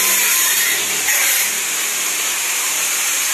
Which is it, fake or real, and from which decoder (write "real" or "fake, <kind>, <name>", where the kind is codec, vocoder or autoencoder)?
fake, vocoder, BigVGAN v2